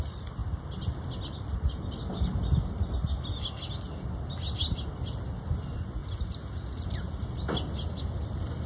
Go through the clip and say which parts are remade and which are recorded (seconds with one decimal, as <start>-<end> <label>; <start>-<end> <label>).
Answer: 0.0-8.7 recorded